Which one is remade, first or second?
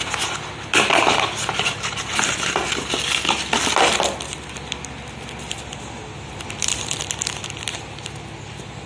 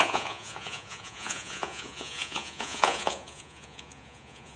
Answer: second